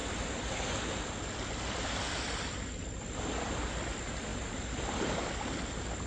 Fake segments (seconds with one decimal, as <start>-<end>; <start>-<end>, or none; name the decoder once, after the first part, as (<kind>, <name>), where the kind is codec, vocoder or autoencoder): none